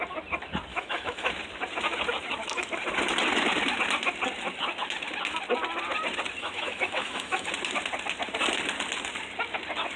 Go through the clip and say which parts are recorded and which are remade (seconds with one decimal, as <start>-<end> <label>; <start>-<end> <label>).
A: 0.0-0.7 recorded; 0.7-1.3 remade; 1.3-6.4 recorded; 6.4-7.5 remade; 7.5-10.0 recorded